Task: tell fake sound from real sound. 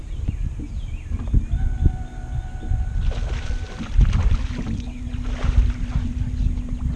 real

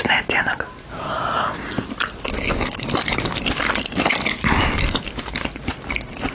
real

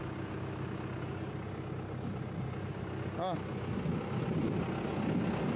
real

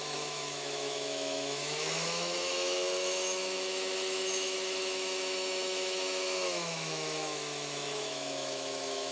fake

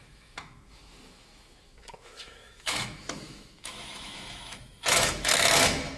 fake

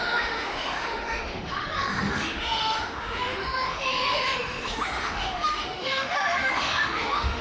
fake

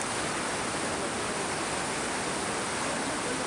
real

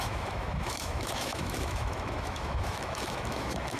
fake